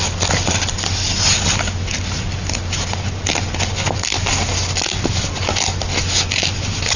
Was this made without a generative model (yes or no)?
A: yes